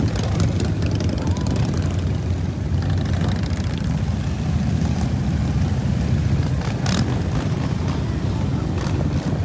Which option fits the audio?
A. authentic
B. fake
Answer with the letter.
A